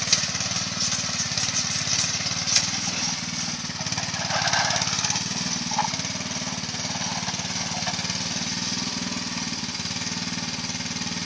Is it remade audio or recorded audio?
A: recorded